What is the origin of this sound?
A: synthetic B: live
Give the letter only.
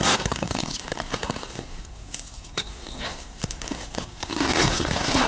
A